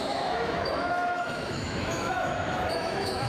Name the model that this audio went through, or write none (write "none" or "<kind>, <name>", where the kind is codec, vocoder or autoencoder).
autoencoder, DAC-VAE